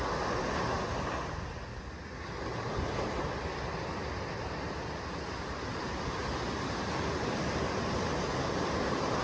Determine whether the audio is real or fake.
real